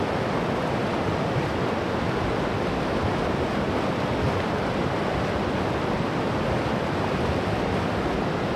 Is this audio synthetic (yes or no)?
no